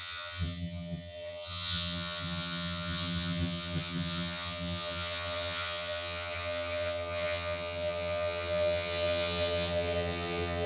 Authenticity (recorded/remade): remade